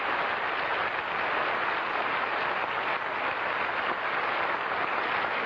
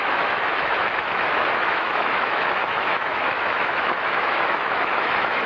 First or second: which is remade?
second